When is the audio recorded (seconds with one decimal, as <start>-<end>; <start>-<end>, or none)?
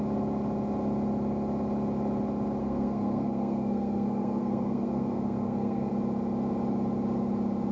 0.0-2.6; 5.9-7.7